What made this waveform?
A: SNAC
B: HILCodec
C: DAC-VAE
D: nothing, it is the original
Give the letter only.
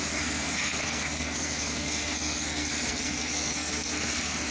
A